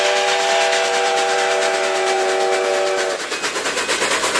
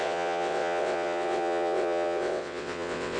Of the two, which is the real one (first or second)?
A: first